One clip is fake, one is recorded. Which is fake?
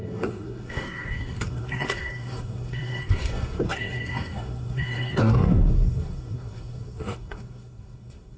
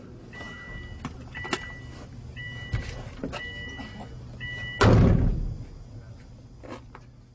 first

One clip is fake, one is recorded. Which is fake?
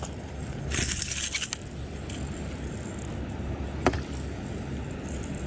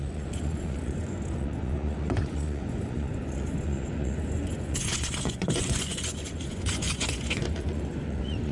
second